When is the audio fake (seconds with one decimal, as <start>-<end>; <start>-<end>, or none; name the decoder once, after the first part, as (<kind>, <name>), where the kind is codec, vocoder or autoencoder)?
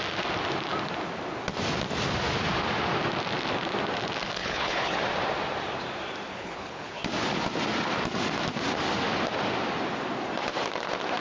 4.4-5.0 (codec, HILCodec); 6.3-7.0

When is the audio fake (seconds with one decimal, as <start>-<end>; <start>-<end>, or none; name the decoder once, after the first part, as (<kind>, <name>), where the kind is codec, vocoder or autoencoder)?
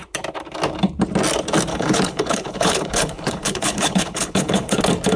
1.7-4.8 (codec, HILCodec)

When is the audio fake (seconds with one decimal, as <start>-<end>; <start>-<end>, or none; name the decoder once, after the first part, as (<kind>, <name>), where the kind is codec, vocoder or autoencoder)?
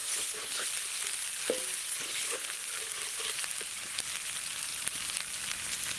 0.0-0.7 (codec, HILCodec); 1.9-2.5